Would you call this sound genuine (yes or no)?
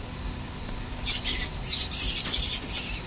yes